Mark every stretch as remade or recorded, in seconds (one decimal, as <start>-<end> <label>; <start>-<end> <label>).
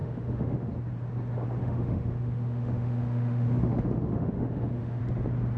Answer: 0.0-0.7 remade; 0.7-1.6 recorded; 1.6-5.0 remade; 5.0-5.6 recorded